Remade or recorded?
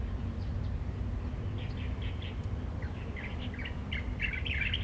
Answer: recorded